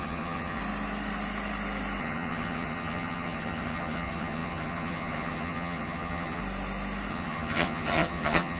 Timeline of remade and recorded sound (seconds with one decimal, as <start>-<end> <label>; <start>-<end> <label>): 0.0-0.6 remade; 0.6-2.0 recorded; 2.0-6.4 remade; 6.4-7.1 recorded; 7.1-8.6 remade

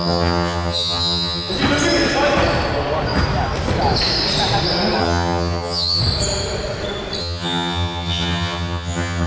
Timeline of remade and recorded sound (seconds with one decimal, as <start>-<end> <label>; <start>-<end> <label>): 0.0-1.5 remade; 1.5-5.0 recorded; 5.0-6.0 remade; 6.0-7.2 recorded; 7.2-9.3 remade

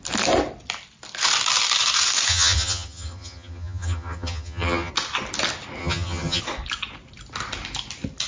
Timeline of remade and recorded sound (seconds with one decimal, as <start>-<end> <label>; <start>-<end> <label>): 0.0-2.3 recorded; 2.3-4.9 remade; 4.9-5.8 recorded; 5.8-6.4 remade; 6.4-8.3 recorded

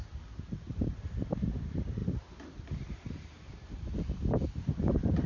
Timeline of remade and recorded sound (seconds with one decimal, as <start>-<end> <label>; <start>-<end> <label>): 0.0-5.3 recorded